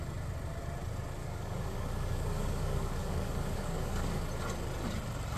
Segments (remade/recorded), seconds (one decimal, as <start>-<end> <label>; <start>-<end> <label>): 0.0-1.2 recorded; 1.2-4.2 remade; 4.2-5.4 recorded